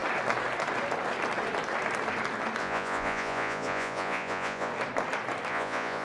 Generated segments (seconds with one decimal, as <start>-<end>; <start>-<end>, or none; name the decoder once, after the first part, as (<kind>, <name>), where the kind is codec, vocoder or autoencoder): 2.6-4.7 (vocoder, Vocos); 5.5-6.0